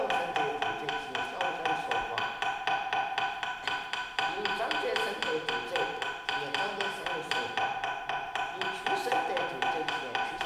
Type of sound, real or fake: real